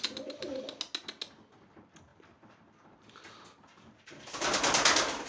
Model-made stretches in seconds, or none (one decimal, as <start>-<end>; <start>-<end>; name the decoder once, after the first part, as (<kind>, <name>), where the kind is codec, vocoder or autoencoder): none